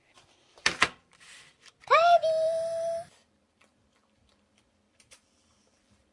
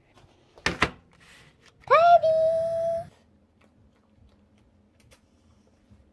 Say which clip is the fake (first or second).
first